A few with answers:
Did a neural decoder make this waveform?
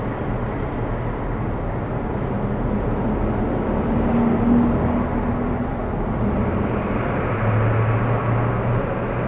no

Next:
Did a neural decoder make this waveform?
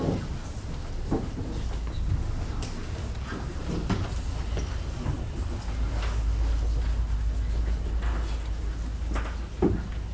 no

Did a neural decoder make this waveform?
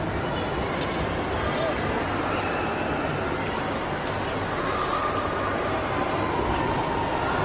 no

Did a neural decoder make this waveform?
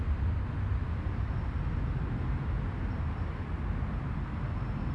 no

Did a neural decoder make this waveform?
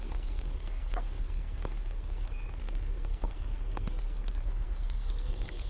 yes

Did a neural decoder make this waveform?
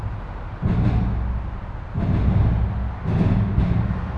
no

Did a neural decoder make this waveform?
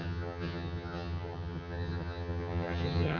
yes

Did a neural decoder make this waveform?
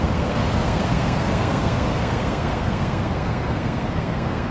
yes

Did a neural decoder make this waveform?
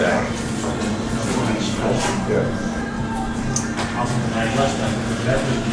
no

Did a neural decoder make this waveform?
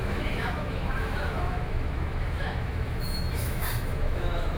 yes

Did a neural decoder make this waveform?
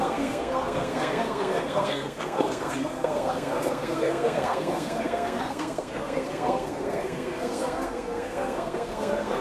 yes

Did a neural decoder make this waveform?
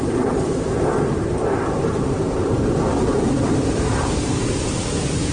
yes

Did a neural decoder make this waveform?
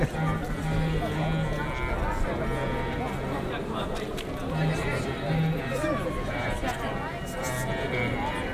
no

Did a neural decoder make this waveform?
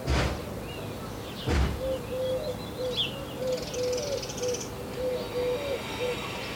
no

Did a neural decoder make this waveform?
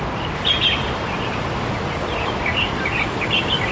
no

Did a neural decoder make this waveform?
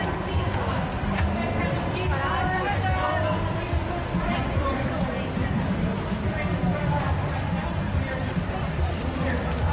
no